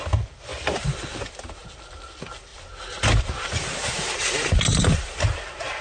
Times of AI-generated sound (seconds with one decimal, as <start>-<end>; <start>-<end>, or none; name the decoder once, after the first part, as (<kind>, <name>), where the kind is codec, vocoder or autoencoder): 0.0-0.5 (vocoder, BigVGAN v2); 1.1-2.5; 3.2-3.8; 4.8-5.8